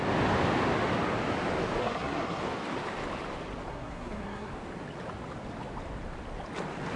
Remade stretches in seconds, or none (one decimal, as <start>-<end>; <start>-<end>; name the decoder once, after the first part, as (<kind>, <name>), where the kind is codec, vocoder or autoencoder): 1.8-2.4 (codec, SNAC); 3.7-4.5